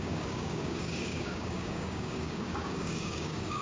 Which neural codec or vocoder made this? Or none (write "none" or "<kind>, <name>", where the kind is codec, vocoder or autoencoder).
codec, DAC